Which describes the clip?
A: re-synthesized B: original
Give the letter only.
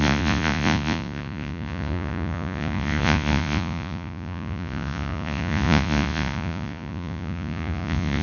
A